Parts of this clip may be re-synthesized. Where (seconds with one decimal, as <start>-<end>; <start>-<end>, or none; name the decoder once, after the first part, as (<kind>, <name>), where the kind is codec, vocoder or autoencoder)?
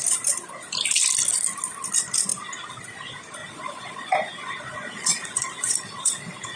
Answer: 3.4-6.6 (vocoder, Vocos)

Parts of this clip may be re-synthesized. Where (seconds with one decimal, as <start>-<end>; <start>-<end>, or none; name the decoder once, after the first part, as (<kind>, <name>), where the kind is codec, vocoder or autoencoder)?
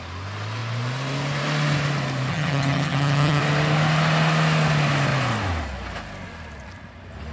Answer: 2.3-3.4 (vocoder, HiFi-GAN)